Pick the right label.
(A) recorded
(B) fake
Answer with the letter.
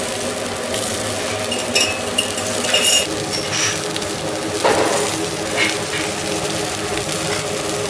A